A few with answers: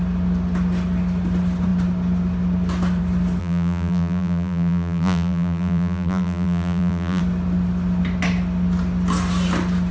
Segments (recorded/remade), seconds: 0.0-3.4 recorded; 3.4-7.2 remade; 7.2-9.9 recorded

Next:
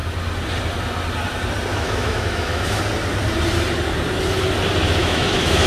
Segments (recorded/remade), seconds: 0.0-1.7 recorded; 1.7-2.8 remade; 2.8-5.0 recorded; 5.0-5.7 remade

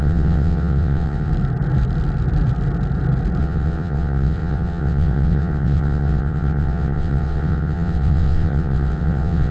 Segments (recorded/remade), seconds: 0.0-1.3 remade; 1.3-3.4 recorded; 3.4-9.5 remade

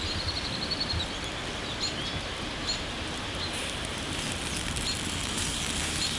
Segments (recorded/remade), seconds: 0.0-2.6 recorded; 2.6-4.1 remade; 4.1-6.2 recorded